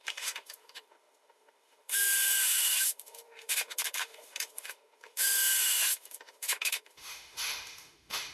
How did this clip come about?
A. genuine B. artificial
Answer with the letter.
B